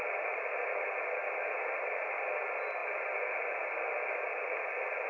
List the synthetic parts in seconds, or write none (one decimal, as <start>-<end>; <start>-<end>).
none